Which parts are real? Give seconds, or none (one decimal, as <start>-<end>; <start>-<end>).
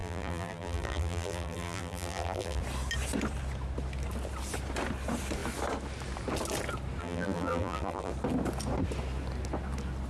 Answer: 2.6-7.0; 8.1-10.1